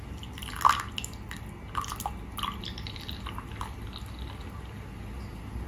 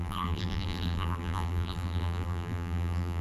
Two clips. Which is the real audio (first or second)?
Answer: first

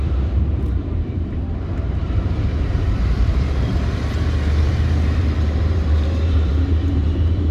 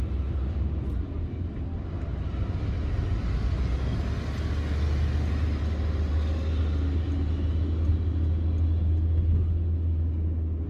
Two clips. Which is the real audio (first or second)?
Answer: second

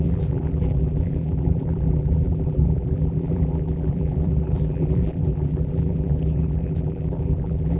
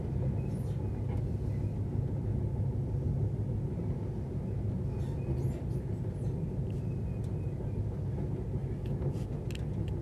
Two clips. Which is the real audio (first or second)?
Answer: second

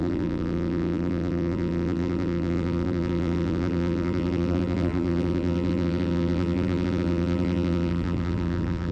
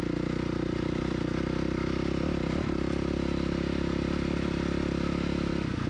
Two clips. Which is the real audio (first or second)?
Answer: second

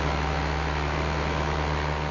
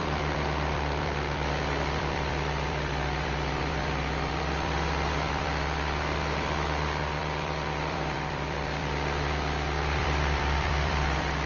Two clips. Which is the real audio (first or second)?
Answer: first